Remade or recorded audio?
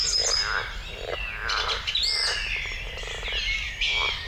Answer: recorded